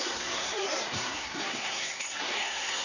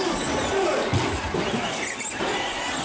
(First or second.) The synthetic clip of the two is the first